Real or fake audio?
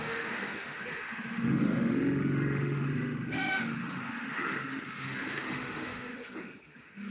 fake